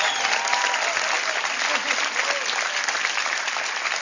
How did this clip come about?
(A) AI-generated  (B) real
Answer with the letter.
B